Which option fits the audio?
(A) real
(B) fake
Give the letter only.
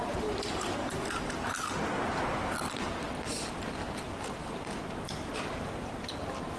A